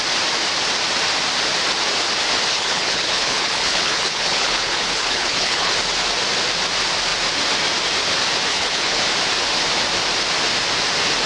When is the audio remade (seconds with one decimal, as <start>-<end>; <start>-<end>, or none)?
2.5-5.7; 8.5-9.0